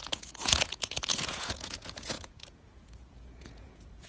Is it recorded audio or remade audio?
remade